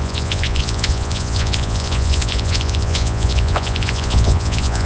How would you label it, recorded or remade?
remade